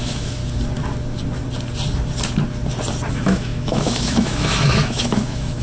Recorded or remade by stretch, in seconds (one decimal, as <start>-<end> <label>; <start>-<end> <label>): 0.0-0.4 remade; 0.4-3.1 recorded; 3.1-5.6 remade